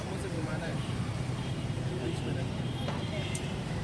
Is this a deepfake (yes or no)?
yes